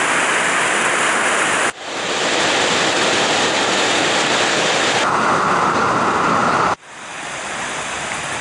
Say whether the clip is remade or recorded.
recorded